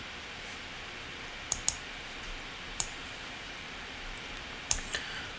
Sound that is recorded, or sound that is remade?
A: remade